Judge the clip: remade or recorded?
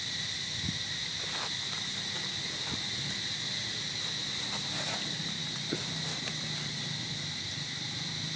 recorded